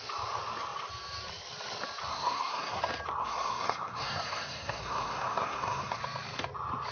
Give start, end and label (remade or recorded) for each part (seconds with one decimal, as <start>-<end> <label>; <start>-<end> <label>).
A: 0.0-2.1 recorded; 2.1-2.8 remade; 2.8-3.2 recorded; 3.2-6.0 remade; 6.0-6.9 recorded